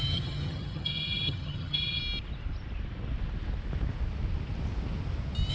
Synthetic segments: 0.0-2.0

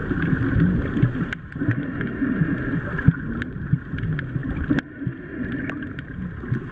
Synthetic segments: none

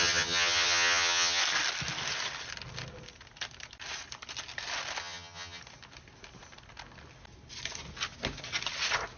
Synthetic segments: 0.0-1.4; 5.0-5.6

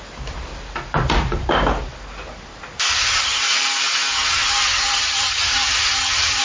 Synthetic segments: 2.9-3.4; 4.1-6.4

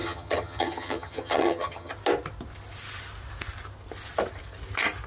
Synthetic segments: 0.0-1.9